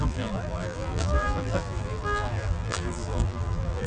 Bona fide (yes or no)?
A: no